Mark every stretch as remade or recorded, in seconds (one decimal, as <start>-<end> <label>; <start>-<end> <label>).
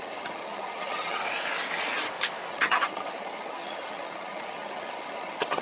0.0-1.2 remade; 1.2-2.5 recorded; 2.5-5.6 remade